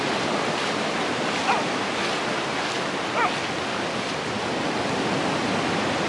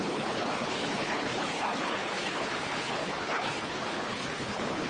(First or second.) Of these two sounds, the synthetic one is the second